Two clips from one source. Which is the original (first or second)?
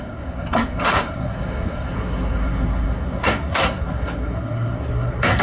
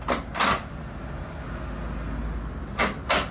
second